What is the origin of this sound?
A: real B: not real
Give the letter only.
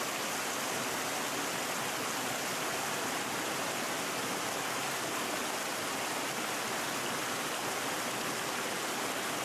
A